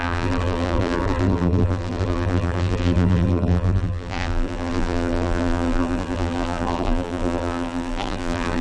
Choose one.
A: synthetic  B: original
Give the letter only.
A